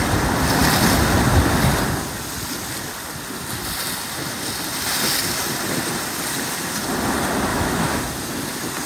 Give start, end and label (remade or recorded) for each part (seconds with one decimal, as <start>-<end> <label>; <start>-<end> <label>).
0.0-7.5 recorded; 7.5-8.0 remade; 8.0-8.9 recorded